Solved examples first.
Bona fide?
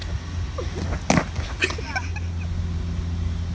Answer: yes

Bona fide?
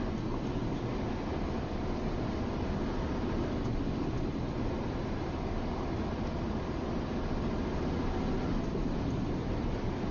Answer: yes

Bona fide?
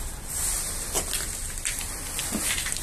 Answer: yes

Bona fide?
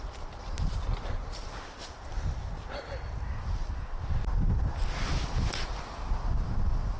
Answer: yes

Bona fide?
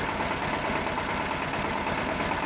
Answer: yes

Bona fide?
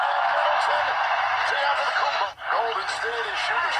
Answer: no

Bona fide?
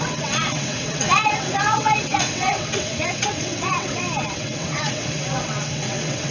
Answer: no